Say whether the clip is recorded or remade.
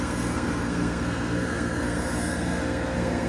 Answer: remade